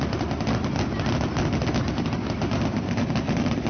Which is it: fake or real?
real